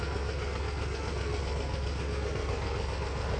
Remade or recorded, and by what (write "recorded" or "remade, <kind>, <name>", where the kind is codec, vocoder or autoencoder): remade, codec, SNAC